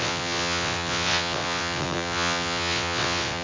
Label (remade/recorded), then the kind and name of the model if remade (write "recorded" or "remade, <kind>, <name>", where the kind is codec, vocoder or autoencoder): remade, vocoder, WaveNeXt